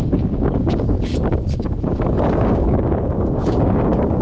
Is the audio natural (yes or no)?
no